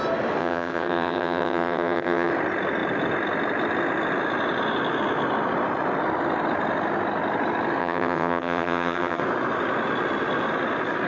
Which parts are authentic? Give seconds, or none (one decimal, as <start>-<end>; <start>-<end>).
0.0-0.4; 2.3-7.8; 9.2-11.1